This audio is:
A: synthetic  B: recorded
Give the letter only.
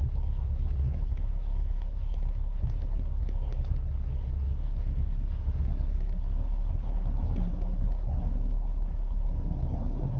A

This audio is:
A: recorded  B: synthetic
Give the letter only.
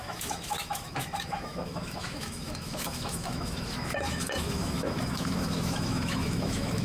B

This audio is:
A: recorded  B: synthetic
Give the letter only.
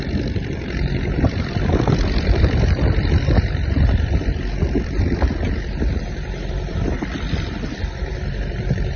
B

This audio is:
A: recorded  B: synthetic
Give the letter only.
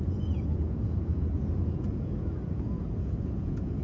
B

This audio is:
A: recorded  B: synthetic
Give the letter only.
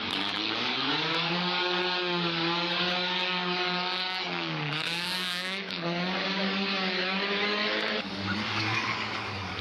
B